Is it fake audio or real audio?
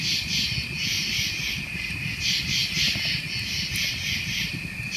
real